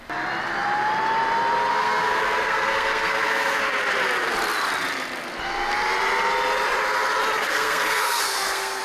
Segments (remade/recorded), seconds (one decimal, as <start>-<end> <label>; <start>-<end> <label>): 0.0-1.7 recorded; 1.7-3.5 remade; 3.5-7.4 recorded; 7.4-8.8 remade